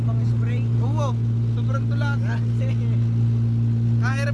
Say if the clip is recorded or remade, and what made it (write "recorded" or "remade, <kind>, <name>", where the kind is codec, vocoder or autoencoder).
recorded